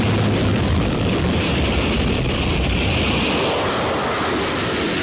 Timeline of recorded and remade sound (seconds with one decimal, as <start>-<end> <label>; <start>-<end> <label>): 0.0-5.0 recorded

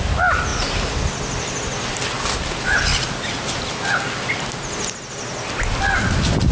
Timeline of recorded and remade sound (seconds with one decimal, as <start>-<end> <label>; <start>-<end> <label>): 0.0-6.5 recorded

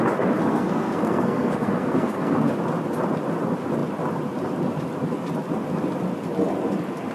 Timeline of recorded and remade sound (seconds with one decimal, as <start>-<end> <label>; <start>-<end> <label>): 0.0-0.4 recorded; 0.4-2.5 remade; 2.5-7.1 recorded

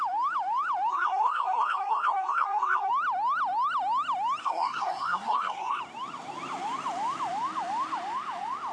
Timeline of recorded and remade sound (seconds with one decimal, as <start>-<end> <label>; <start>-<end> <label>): 0.0-0.9 recorded; 0.9-2.9 remade; 2.9-4.4 recorded; 4.4-5.8 remade; 5.8-8.7 recorded

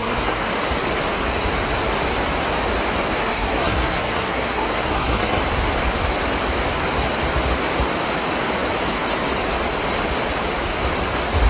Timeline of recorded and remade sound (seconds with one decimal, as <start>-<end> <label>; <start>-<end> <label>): 0.0-0.5 remade; 0.5-3.2 recorded; 3.2-5.4 remade; 5.4-11.5 recorded

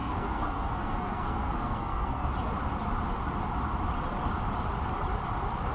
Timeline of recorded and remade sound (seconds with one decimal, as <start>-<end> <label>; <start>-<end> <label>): 0.0-2.3 remade; 2.3-5.7 recorded

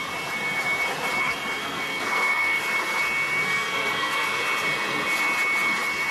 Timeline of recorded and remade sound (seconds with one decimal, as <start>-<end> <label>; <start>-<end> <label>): 0.0-1.6 recorded; 1.6-2.6 remade; 2.6-3.4 recorded; 3.4-4.4 remade; 4.4-6.1 recorded